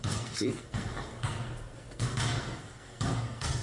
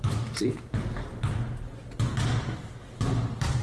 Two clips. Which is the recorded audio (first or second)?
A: second